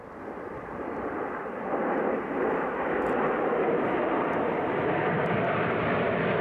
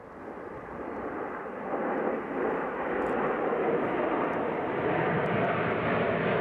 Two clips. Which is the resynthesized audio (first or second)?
first